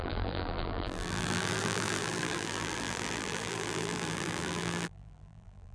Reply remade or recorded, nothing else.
remade